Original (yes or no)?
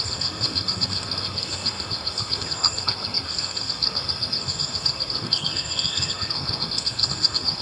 no